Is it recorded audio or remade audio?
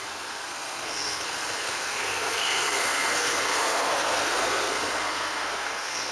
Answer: remade